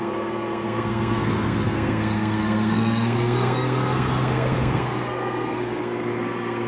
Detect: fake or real fake